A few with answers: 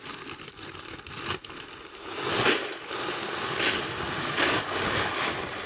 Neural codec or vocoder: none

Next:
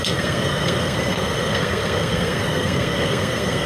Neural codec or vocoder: codec, SNAC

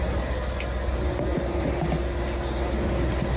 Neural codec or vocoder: none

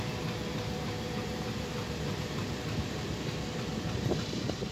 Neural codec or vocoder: vocoder, BigVGAN v2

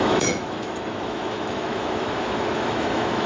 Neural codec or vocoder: autoencoder, DAC-VAE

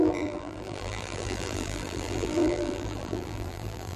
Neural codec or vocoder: vocoder, BigVGAN v2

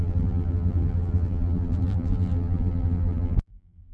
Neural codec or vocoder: vocoder, BigVGAN v2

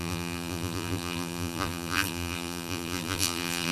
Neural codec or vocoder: vocoder, BigVGAN v2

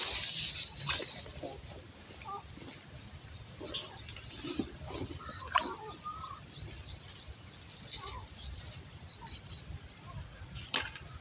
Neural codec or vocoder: none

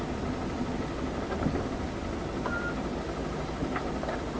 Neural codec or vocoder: none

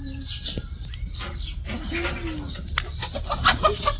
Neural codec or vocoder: none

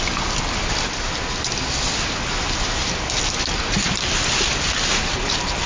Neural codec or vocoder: none